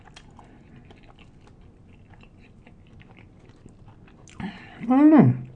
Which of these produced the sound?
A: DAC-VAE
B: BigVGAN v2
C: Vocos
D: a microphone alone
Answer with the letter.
D